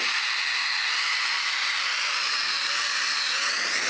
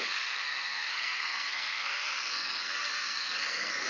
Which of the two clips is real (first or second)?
first